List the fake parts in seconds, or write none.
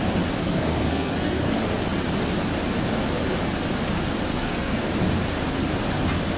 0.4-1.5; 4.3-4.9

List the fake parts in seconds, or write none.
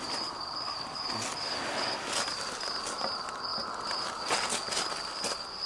none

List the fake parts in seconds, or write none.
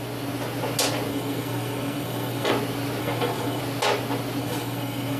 1.1-2.5; 3.0-3.6; 4.4-5.2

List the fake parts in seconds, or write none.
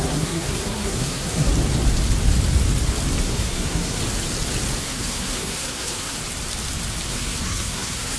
0.0-1.5; 3.2-4.0; 4.8-6.2; 7.1-8.2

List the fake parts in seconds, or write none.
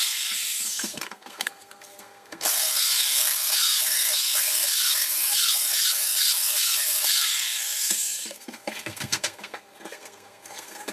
0.0-10.9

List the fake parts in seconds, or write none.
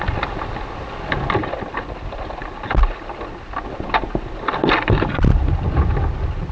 none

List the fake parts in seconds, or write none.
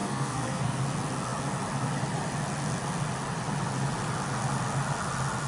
0.0-0.8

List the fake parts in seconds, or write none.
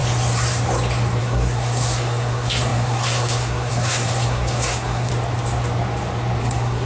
1.2-5.1; 6.4-6.9